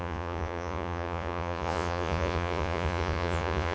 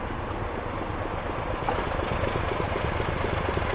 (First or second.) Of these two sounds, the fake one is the first